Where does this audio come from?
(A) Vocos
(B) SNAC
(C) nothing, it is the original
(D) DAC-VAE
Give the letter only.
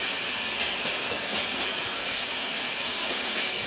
B